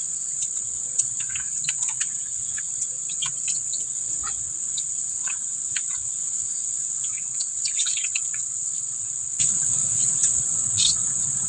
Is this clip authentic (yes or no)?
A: no